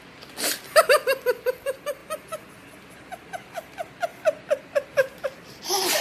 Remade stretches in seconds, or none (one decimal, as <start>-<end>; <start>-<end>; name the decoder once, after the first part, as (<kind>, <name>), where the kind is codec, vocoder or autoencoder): none